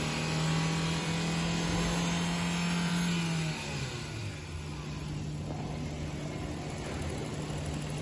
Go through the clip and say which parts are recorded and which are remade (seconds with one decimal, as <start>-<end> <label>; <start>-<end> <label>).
0.0-8.0 recorded

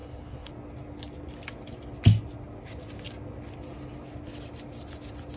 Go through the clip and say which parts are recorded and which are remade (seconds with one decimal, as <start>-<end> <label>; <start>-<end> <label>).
0.0-0.5 remade; 0.5-5.4 recorded